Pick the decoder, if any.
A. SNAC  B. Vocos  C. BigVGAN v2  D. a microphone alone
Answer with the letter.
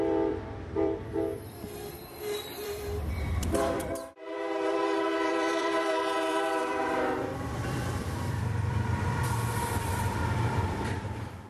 C